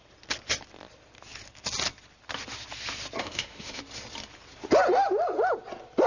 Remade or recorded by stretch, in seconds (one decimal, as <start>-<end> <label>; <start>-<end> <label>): 0.0-3.2 recorded; 3.2-3.8 remade; 3.8-6.1 recorded